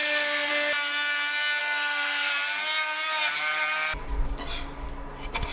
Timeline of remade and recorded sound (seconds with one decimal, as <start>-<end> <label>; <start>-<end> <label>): 0.0-0.5 remade; 0.5-1.6 recorded; 1.6-2.3 remade; 2.3-5.5 recorded